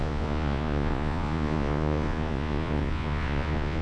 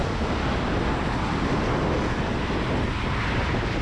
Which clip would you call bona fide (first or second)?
second